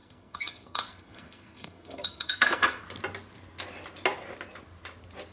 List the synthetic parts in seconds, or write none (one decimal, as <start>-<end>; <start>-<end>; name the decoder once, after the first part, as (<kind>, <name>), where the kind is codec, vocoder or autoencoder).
0.0-2.8 (codec, SNAC)